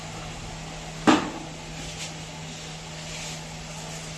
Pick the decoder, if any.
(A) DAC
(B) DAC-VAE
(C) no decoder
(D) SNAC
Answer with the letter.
C